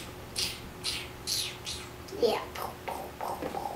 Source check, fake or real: real